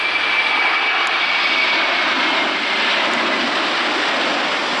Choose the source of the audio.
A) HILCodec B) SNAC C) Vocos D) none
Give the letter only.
D